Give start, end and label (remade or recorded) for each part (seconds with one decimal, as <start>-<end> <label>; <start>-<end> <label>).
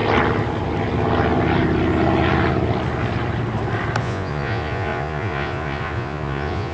0.0-4.0 recorded; 4.0-6.7 remade